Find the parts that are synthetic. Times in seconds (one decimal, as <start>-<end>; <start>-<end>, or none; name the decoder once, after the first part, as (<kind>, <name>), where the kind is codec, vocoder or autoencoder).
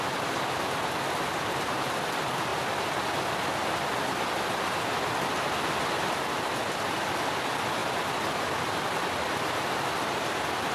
none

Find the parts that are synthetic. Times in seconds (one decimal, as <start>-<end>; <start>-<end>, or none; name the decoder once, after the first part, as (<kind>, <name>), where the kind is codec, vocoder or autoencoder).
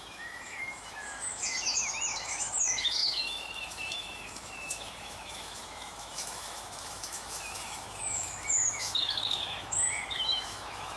0.0-11.0 (autoencoder, DAC-VAE)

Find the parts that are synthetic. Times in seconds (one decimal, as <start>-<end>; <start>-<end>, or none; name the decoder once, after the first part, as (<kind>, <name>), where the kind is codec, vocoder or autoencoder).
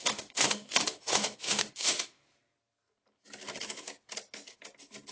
0.0-2.2 (autoencoder, DAC-VAE)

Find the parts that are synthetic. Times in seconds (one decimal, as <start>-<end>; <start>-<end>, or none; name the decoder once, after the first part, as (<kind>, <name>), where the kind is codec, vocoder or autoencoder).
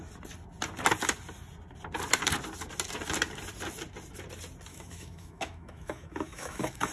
4.7-6.9 (autoencoder, DAC-VAE)